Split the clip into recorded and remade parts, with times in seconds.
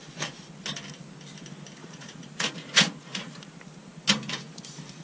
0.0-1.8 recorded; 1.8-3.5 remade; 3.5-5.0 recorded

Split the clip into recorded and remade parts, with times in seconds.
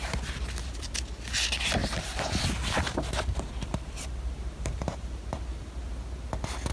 0.0-1.8 recorded; 1.8-2.4 remade; 2.4-3.3 recorded; 3.3-5.6 remade; 5.6-6.7 recorded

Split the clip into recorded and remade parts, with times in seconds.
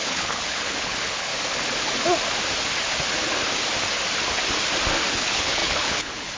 0.0-1.3 remade; 1.3-5.1 recorded; 5.1-6.4 remade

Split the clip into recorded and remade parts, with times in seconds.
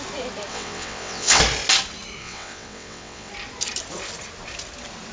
0.0-0.5 recorded; 0.5-1.4 remade; 1.4-2.2 recorded; 2.2-3.3 remade; 3.3-5.1 recorded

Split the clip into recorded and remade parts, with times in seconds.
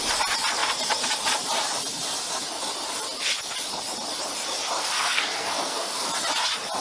0.0-4.8 recorded; 4.8-6.1 remade; 6.1-6.8 recorded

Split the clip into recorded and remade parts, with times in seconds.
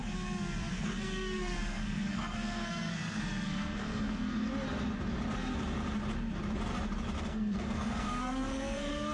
0.0-0.7 recorded; 0.7-4.5 remade; 4.5-7.2 recorded; 7.2-9.1 remade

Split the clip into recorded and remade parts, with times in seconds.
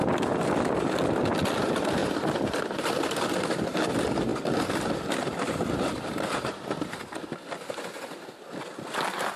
0.0-9.4 recorded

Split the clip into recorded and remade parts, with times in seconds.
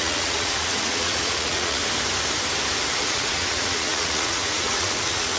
0.0-1.8 remade; 1.8-2.9 recorded; 2.9-5.4 remade